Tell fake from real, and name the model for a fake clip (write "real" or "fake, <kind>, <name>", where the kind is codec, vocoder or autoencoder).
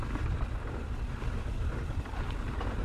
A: real